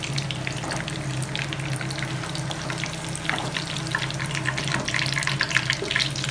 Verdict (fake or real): real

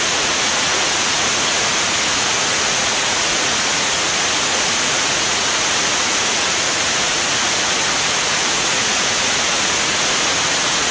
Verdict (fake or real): fake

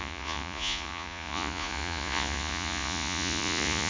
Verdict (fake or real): fake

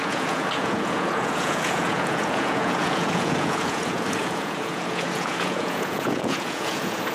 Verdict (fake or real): fake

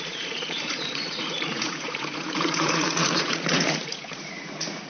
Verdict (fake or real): fake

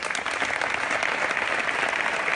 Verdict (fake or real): real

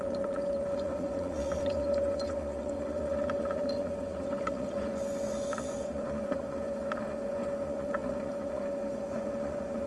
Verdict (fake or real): fake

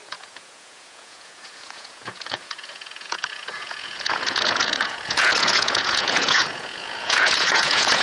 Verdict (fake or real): fake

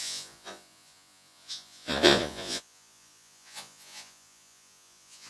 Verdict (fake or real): fake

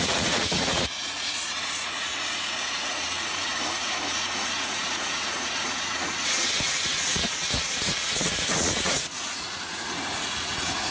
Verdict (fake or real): fake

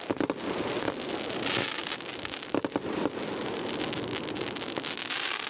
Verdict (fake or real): real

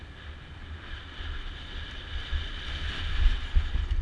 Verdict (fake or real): real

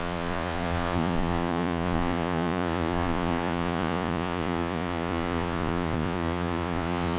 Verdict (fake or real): fake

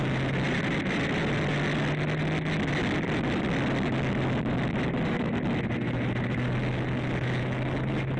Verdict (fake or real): real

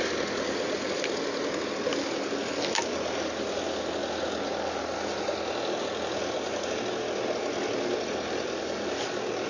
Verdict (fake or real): real